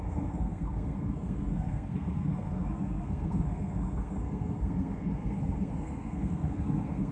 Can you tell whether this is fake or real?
fake